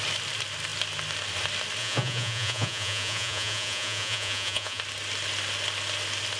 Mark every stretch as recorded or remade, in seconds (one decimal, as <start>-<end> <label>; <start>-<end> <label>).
0.0-1.8 recorded; 1.8-4.8 remade; 4.8-6.4 recorded

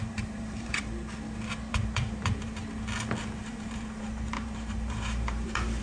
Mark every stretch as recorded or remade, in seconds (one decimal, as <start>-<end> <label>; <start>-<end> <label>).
0.0-0.9 remade; 0.9-1.7 recorded; 1.7-2.6 remade; 2.6-3.4 recorded; 3.4-5.8 remade

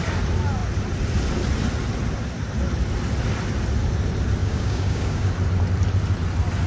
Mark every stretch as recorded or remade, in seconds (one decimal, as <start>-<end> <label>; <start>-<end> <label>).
0.0-4.4 recorded; 4.4-5.3 remade; 5.3-6.7 recorded

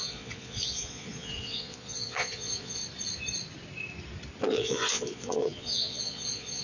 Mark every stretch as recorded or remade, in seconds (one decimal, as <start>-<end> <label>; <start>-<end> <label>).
0.0-2.8 remade; 2.8-4.4 recorded; 4.4-6.6 remade

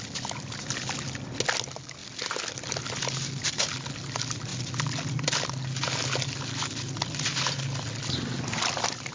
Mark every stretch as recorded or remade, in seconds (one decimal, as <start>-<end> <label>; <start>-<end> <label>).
0.0-9.1 recorded

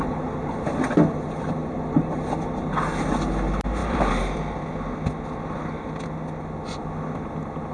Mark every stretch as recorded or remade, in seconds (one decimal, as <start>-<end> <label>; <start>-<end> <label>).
0.0-7.7 recorded

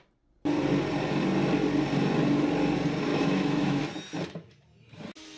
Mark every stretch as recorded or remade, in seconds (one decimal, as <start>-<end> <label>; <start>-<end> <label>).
0.0-3.1 recorded; 3.1-3.8 remade; 3.8-5.4 recorded